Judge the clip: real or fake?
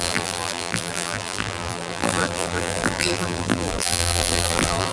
fake